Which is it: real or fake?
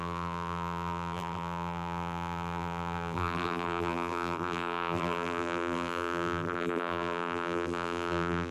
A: fake